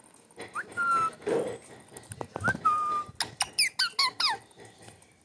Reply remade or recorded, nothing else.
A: recorded